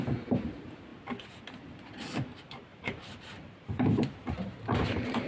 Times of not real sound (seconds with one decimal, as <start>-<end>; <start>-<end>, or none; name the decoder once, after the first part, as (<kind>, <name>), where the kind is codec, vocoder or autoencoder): 2.7-5.3 (vocoder, BigVGAN v2)